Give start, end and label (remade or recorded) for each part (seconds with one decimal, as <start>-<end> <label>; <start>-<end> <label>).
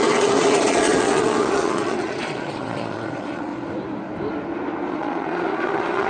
0.0-3.5 remade; 3.5-4.9 recorded; 4.9-6.1 remade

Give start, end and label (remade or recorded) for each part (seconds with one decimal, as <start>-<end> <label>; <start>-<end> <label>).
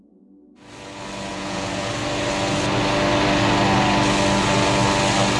0.0-1.3 recorded; 1.3-1.9 remade; 1.9-5.4 recorded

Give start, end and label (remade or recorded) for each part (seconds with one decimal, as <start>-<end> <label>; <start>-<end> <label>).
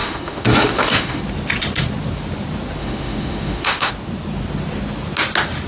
0.0-1.2 remade; 1.2-2.8 recorded; 2.8-3.9 remade; 3.9-5.7 recorded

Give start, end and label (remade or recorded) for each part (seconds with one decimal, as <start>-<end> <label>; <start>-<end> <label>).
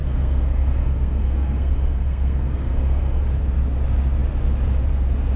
0.0-3.2 remade; 3.2-5.4 recorded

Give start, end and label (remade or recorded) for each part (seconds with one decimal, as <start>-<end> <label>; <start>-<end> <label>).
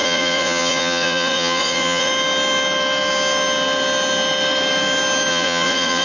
0.0-2.1 remade; 2.1-5.3 recorded; 5.3-6.0 remade